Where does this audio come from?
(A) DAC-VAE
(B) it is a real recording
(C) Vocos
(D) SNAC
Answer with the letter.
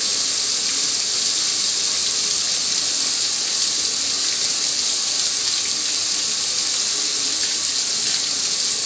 B